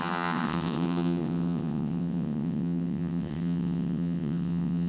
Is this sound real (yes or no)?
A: no